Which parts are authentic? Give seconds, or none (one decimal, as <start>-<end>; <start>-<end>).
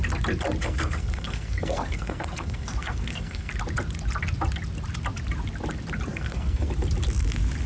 0.0-0.6; 3.5-6.1; 6.7-7.7